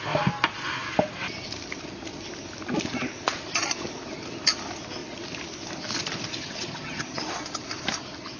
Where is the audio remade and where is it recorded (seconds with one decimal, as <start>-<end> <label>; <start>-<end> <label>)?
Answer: 0.0-6.3 recorded; 6.3-7.3 remade; 7.3-8.4 recorded